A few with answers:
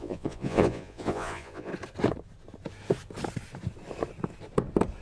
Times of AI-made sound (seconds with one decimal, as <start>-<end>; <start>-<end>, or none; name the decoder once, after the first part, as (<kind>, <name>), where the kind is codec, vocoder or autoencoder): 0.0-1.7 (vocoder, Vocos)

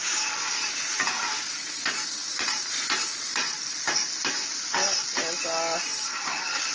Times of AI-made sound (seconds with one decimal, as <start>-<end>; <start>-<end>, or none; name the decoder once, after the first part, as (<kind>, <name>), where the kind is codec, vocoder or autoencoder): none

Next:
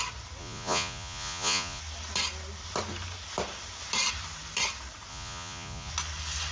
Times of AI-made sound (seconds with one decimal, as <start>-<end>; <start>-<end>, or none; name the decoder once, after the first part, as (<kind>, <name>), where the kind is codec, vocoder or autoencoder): 0.4-1.8 (vocoder, Vocos); 5.1-5.9